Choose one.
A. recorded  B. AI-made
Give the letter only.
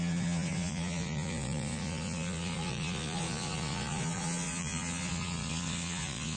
B